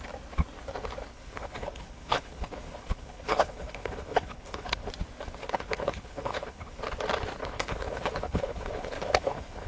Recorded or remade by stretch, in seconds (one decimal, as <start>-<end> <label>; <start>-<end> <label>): 0.0-1.1 recorded; 1.1-4.9 remade; 4.9-5.4 recorded; 5.4-6.8 remade; 6.8-7.4 recorded; 7.4-9.7 remade